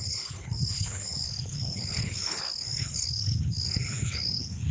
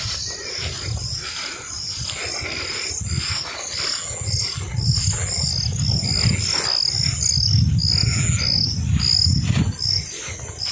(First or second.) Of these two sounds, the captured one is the second